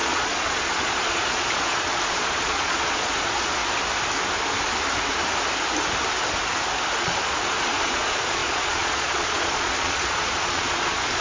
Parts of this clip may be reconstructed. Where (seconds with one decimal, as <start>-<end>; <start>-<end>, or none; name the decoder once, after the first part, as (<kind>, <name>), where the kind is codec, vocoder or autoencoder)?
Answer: 0.0-3.6 (vocoder, Vocos); 7.0-11.2